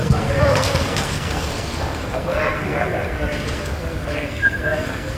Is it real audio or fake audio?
fake